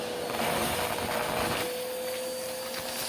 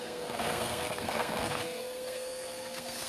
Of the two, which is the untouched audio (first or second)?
first